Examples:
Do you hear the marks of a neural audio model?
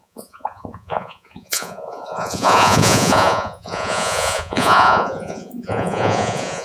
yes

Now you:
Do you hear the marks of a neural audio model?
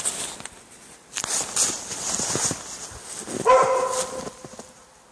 no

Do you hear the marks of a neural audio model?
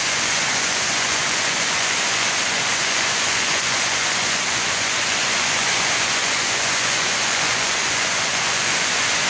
yes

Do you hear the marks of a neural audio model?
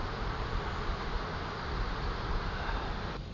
no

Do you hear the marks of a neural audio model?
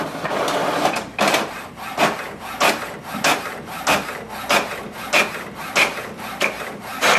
no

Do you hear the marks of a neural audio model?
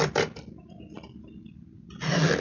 no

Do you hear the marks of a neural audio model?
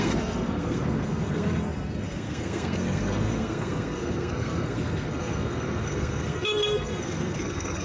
yes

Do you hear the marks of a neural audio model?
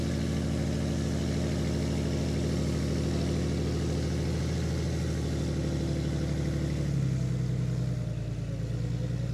no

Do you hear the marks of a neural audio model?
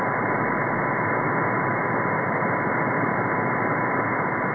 no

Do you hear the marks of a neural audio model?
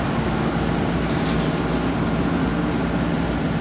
no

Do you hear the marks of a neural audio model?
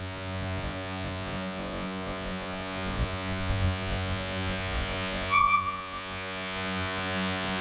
yes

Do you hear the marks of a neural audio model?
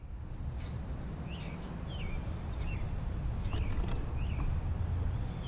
no